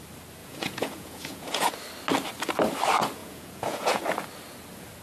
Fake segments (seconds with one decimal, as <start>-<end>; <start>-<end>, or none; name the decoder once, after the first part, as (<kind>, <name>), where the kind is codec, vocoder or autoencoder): 0.4-1.7 (vocoder, Vocos); 3.2-4.0